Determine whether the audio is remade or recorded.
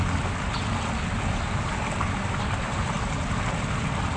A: recorded